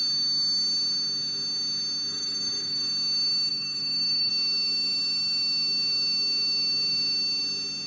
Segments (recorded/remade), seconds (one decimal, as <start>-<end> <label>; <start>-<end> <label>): 0.0-2.1 recorded; 2.1-2.9 remade; 2.9-3.5 recorded; 3.5-4.3 remade; 4.3-7.9 recorded